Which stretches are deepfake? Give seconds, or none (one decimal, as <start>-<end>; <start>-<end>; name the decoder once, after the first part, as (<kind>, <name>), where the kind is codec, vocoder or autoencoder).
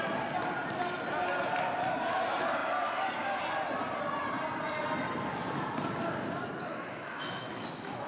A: 6.7-8.1 (autoencoder, DAC-VAE)